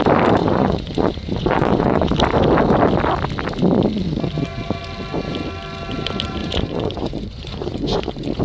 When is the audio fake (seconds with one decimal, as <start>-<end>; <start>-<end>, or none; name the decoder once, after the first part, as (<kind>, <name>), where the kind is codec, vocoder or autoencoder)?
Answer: 0.4-2.1 (vocoder, Vocos); 6.4-8.4